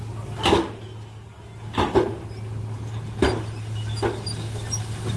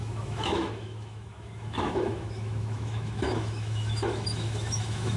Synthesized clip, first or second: second